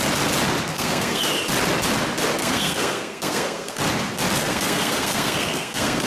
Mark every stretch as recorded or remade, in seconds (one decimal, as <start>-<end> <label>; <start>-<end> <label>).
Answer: 0.0-0.7 recorded; 0.7-1.2 remade; 1.2-2.4 recorded; 2.4-3.8 remade; 3.8-4.4 recorded; 4.4-6.1 remade